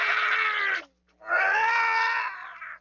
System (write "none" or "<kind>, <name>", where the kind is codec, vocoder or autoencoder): none